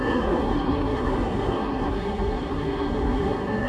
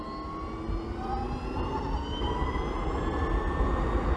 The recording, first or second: second